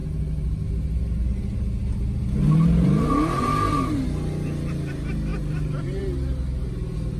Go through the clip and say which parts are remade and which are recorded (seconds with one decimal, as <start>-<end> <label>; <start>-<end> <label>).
0.0-5.3 recorded; 5.3-6.0 remade; 6.0-7.2 recorded